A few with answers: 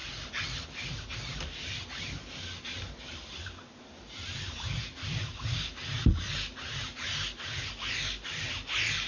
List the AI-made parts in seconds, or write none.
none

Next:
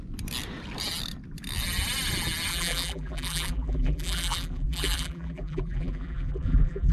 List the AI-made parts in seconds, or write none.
2.5-6.9 (vocoder, BigVGAN v2)

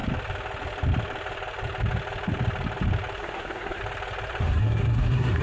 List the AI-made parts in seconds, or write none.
3.2-3.8 (codec, SNAC); 4.4-5.4

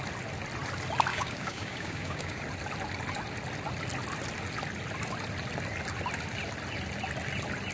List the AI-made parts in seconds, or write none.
1.1-2.4 (codec, DAC)

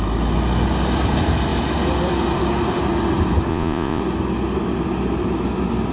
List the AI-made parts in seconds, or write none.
3.5-4.0 (vocoder, Vocos)

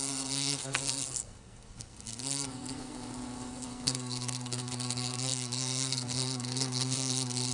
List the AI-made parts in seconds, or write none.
0.0-7.5 (codec, SNAC)

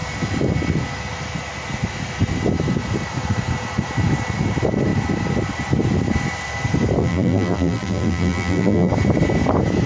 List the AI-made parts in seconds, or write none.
7.0-8.9 (vocoder, BigVGAN v2)

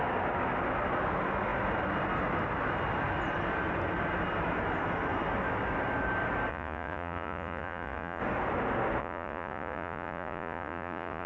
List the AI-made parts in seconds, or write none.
6.5-8.2 (vocoder, Vocos); 9.0-11.3